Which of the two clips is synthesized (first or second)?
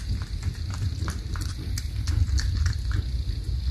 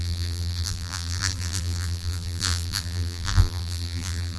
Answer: second